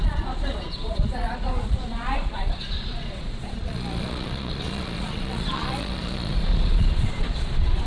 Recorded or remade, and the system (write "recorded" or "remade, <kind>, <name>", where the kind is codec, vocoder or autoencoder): remade, vocoder, Vocos